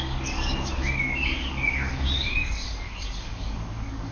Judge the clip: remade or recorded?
remade